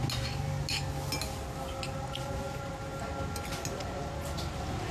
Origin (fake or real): real